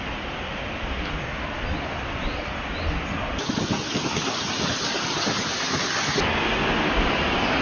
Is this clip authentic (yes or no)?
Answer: yes